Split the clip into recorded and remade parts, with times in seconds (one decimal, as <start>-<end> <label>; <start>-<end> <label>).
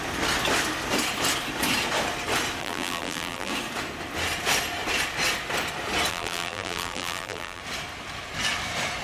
0.0-2.6 recorded; 2.6-3.5 remade; 3.5-6.1 recorded; 6.1-7.6 remade; 7.6-9.0 recorded